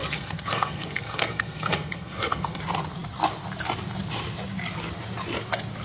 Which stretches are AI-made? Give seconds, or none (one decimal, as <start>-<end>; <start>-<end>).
0.0-2.6